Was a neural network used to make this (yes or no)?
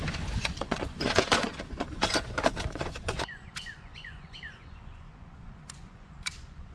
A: yes